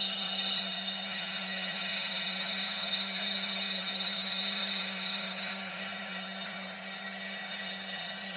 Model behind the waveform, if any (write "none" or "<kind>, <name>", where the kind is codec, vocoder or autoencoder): vocoder, HiFi-GAN